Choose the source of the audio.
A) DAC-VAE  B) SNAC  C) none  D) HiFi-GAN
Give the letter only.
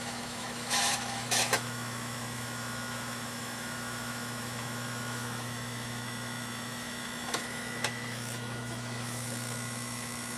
A